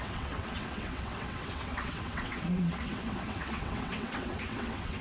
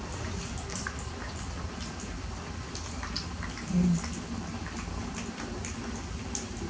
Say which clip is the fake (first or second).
first